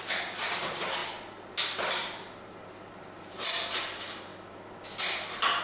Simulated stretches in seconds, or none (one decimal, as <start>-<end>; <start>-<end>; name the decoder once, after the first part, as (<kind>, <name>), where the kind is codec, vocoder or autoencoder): 0.0-1.0 (vocoder, BigVGAN v2); 2.4-4.3